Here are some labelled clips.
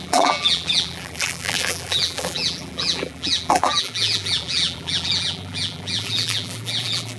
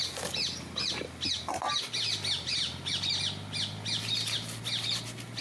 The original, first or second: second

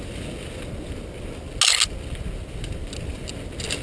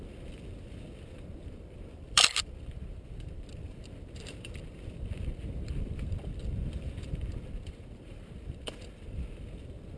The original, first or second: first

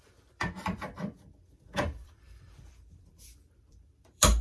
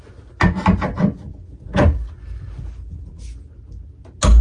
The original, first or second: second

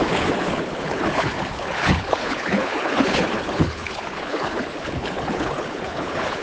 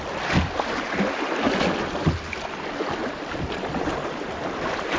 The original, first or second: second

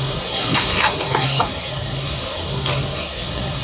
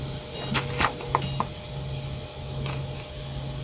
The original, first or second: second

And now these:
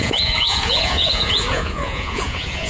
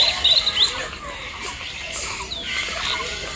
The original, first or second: second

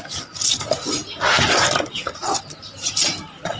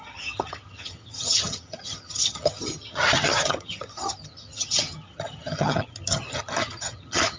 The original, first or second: first